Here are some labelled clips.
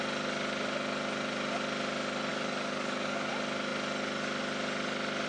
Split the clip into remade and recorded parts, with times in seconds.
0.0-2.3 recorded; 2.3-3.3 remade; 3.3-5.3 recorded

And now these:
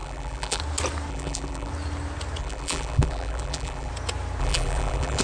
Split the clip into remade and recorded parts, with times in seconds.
0.0-0.6 remade; 0.6-1.1 recorded; 1.1-1.7 remade; 1.7-2.4 recorded; 2.4-3.9 remade; 3.9-4.4 recorded; 4.4-5.2 remade

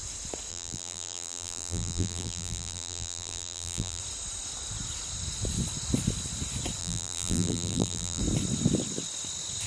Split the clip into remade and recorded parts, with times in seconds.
0.0-0.5 recorded; 0.5-4.0 remade; 4.0-6.8 recorded; 6.8-8.2 remade; 8.2-9.7 recorded

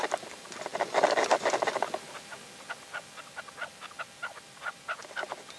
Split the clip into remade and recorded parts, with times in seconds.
0.0-5.6 recorded

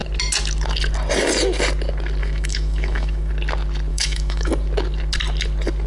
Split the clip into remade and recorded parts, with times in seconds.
0.0-2.2 recorded; 2.2-3.3 remade; 3.3-3.9 recorded; 3.9-4.5 remade; 4.5-5.9 recorded